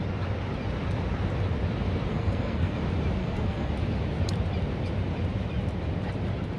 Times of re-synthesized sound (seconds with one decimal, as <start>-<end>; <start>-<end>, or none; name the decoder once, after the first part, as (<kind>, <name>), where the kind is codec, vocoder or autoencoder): 2.1-2.8 (codec, SNAC); 3.2-3.7